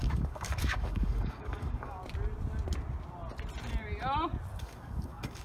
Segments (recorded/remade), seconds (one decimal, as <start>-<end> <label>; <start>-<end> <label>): 0.0-2.0 remade; 2.0-4.6 recorded; 4.6-5.4 remade